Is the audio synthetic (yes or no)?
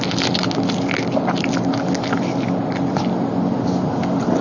no